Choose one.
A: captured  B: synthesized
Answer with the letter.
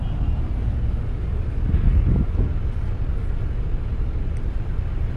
A